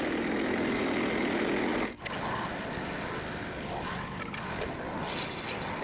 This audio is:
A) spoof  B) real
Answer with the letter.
B